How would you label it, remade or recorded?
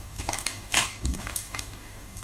remade